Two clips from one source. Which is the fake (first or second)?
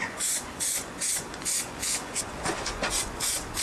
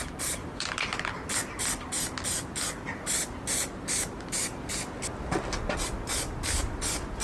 first